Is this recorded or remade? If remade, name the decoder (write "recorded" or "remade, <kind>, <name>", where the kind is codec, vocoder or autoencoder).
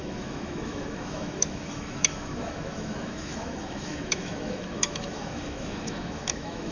remade, autoencoder, DAC-VAE